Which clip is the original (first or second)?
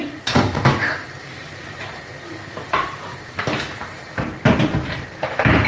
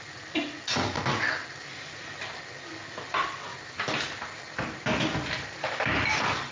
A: second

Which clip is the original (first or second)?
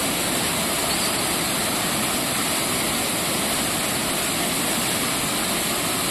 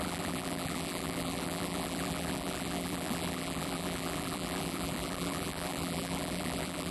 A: first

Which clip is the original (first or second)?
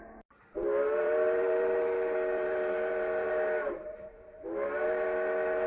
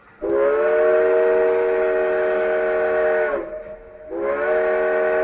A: second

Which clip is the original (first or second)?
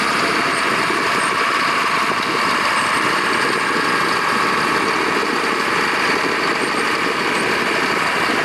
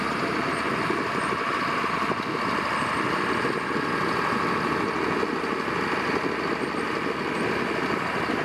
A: second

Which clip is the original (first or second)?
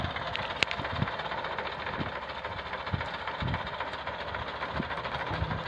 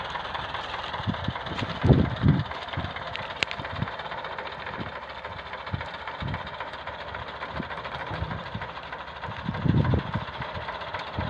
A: first